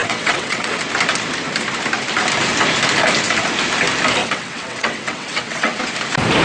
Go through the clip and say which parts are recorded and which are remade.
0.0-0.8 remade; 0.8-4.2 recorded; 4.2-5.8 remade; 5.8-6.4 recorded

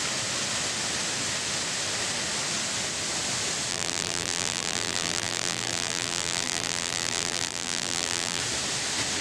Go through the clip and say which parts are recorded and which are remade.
0.0-3.7 recorded; 3.7-8.4 remade; 8.4-9.2 recorded

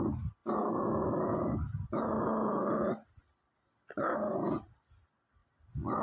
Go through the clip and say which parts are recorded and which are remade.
0.0-6.0 recorded

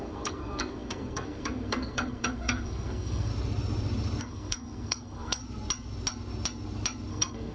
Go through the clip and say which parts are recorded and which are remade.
0.0-3.3 remade; 3.3-4.2 recorded; 4.2-5.4 remade; 5.4-7.1 recorded; 7.1-7.5 remade